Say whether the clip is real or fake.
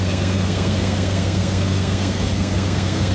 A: fake